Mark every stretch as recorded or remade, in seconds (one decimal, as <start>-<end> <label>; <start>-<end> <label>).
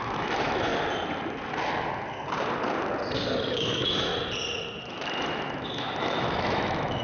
0.0-0.7 remade; 0.7-3.5 recorded; 3.5-4.1 remade; 4.1-4.8 recorded; 4.8-7.0 remade